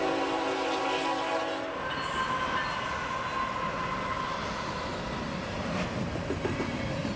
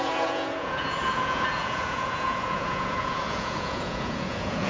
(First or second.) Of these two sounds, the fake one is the second